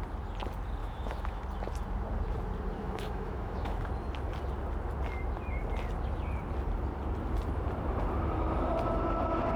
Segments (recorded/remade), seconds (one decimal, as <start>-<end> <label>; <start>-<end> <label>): 0.0-0.8 recorded; 0.8-1.4 remade; 1.4-2.8 recorded; 2.8-3.9 remade; 3.9-9.6 recorded